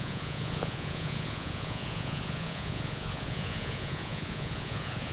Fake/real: fake